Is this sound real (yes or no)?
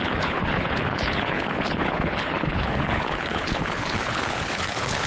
no